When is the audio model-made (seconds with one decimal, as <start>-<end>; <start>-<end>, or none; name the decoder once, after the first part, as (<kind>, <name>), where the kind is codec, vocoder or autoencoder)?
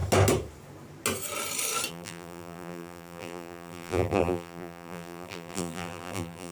1.9-6.5 (vocoder, BigVGAN v2)